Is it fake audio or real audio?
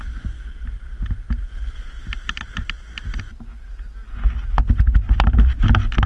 real